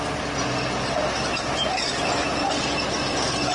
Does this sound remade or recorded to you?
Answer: recorded